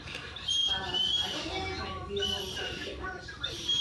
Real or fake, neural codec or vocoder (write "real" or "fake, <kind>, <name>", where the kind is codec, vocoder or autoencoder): real